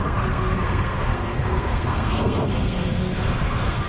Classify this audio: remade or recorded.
remade